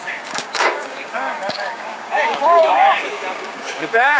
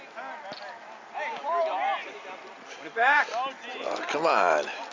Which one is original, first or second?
second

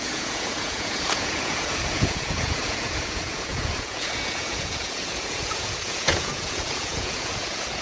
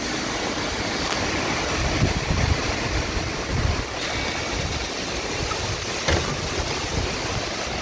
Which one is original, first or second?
second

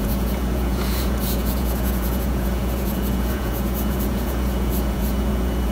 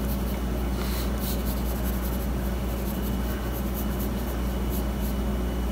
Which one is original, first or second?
second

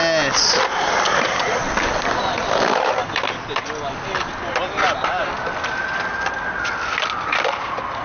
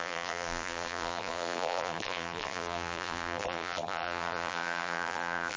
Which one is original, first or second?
first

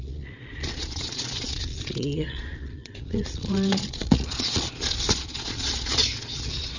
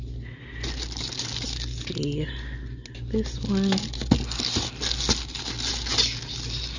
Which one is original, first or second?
second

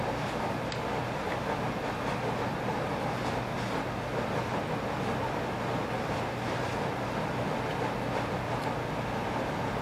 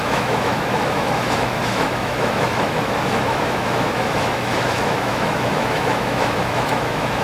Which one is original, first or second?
first